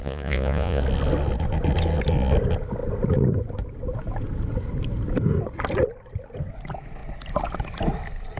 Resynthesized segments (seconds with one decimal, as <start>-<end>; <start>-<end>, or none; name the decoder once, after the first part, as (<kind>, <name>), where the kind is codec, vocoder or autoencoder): 0.0-0.8 (vocoder, Vocos)